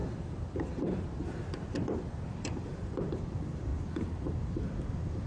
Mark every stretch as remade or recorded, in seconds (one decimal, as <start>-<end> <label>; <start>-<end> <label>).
0.0-3.7 remade; 3.7-5.3 recorded